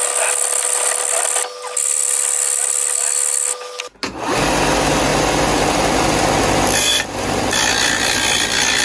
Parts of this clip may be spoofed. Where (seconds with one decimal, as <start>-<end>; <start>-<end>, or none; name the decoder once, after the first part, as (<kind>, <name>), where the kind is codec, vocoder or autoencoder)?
none